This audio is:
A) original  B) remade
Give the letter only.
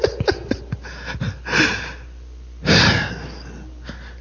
A